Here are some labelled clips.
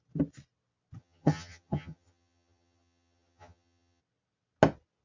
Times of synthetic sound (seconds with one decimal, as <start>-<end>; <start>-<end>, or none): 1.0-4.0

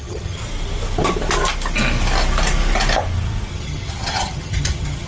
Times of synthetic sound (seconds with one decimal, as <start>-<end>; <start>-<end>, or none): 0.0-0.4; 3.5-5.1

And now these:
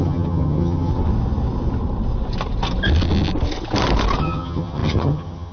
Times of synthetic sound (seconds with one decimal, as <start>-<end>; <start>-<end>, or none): 0.0-0.9; 4.2-5.5

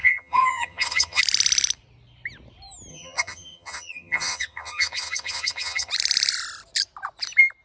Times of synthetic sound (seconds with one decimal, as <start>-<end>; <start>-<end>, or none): 0.0-1.2; 2.9-5.9

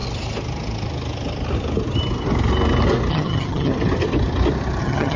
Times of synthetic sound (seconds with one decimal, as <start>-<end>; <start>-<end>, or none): 3.1-3.7; 4.8-5.2

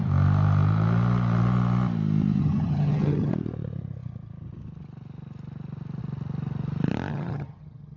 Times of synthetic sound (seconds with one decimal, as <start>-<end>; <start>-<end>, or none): 2.4-3.3; 7.1-8.0

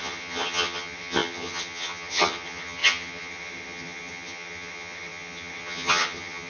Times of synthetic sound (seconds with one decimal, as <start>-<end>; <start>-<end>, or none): 0.0-6.5